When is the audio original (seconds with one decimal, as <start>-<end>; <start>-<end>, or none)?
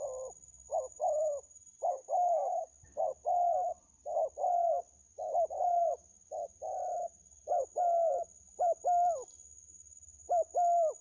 0.0-0.7; 2.6-11.0